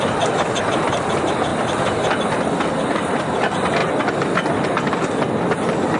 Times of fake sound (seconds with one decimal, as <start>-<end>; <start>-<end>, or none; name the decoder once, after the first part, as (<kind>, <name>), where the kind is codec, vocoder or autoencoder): 0.0-3.8 (vocoder, BigVGAN v2); 4.5-6.0

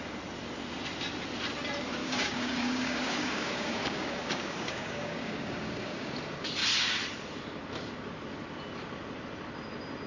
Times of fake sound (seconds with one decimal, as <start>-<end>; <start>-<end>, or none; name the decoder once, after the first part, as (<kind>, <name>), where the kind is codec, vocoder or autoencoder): 2.0-6.1 (codec, DAC)

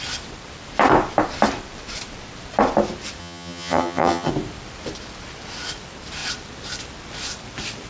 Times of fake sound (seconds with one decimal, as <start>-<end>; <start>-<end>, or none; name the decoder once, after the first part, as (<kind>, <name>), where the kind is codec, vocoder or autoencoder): 3.2-4.3 (vocoder, HiFi-GAN)

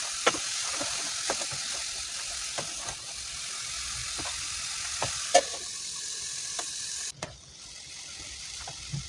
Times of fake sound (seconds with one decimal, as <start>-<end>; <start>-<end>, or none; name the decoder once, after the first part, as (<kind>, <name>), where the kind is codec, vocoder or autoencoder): 1.6-2.2 (vocoder, BigVGAN v2); 4.0-7.4